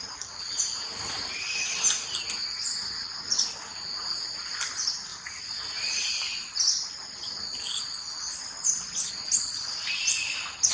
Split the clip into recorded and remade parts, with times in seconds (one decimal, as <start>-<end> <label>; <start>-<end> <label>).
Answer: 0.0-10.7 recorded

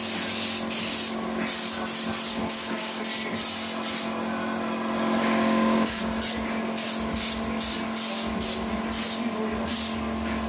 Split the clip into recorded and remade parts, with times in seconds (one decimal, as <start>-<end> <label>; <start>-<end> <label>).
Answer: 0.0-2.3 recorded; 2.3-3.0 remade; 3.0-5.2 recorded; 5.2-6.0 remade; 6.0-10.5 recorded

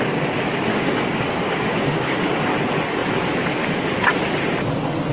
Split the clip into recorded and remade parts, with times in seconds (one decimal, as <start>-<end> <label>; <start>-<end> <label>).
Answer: 0.0-0.7 recorded; 0.7-2.5 remade; 2.5-5.1 recorded

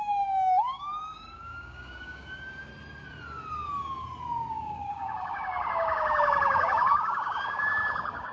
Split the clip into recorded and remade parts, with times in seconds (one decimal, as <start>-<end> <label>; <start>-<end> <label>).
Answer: 0.0-2.7 remade; 2.7-4.5 recorded; 4.5-8.3 remade

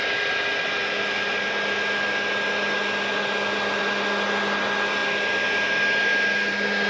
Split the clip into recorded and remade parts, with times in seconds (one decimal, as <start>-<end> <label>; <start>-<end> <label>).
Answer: 0.0-6.9 recorded

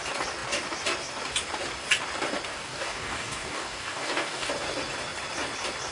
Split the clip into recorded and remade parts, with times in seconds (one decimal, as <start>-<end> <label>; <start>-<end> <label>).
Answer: 0.0-2.5 recorded; 2.5-4.5 remade; 4.5-5.9 recorded

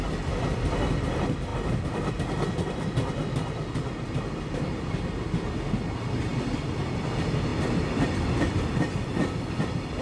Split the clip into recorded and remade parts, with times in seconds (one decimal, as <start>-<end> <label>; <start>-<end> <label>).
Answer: 0.0-10.0 recorded